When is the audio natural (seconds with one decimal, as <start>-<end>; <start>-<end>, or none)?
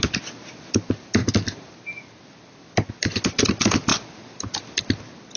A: 0.0-1.2; 2.9-5.4